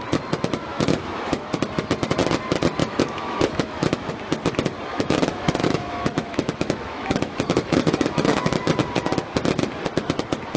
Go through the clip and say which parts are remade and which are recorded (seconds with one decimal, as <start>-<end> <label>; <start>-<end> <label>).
0.0-0.7 recorded; 0.7-1.5 remade; 1.5-2.8 recorded; 2.8-4.1 remade; 4.1-4.9 recorded; 4.9-8.7 remade; 8.7-10.6 recorded